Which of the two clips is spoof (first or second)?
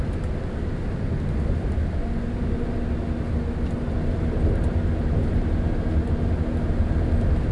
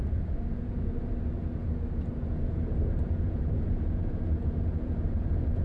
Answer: second